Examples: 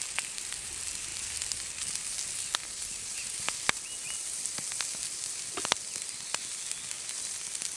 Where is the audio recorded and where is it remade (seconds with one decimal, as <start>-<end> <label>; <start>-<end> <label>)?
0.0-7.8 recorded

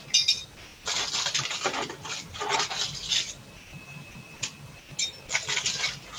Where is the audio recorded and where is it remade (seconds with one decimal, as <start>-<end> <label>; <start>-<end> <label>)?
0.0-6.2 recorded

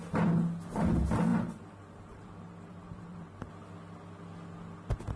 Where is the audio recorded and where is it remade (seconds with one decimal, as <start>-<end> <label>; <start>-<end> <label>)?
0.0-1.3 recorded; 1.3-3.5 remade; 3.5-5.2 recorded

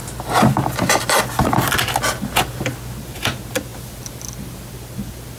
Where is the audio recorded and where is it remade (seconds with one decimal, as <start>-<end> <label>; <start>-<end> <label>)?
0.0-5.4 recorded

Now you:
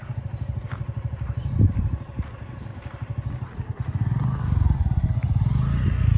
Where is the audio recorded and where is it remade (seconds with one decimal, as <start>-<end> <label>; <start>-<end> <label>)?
0.0-2.7 remade; 2.7-6.2 recorded